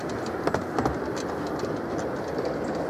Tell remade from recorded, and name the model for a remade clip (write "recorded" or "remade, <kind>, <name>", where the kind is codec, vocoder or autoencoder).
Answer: recorded